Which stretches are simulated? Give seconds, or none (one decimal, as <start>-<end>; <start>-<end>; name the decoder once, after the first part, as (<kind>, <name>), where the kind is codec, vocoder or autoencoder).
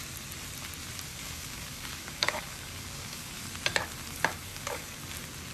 1.1-3.3 (codec, DAC); 4.5-5.0